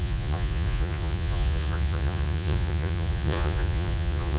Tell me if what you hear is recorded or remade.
remade